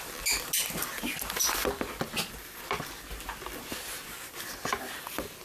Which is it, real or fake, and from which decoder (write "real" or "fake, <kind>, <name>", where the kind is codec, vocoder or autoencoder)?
real